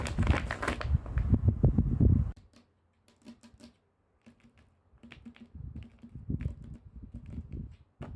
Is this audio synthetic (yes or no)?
no